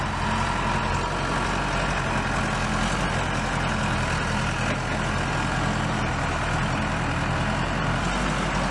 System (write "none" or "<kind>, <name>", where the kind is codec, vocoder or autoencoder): none